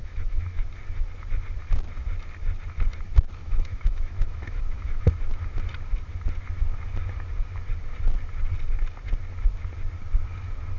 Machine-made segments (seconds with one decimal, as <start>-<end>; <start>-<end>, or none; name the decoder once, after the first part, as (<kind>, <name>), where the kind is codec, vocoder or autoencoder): 0.0-0.6 (autoencoder, DAC-VAE); 3.4-5.1